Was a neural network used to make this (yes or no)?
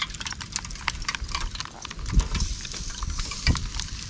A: no